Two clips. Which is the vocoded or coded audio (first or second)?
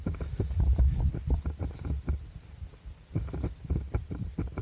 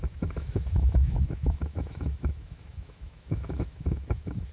second